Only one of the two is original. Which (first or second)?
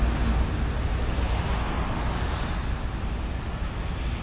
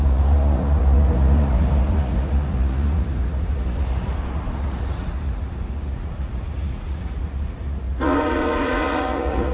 first